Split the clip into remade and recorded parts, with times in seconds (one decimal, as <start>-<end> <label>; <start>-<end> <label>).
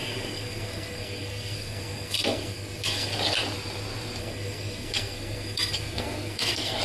0.0-3.2 remade; 3.2-4.2 recorded; 4.2-6.8 remade